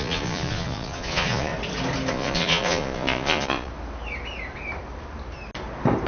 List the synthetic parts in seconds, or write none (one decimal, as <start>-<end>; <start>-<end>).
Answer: 0.0-1.5; 2.1-3.7